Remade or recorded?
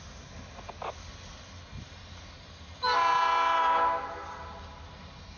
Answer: recorded